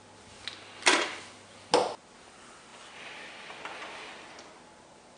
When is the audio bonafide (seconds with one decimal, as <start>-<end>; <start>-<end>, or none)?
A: 0.0-5.2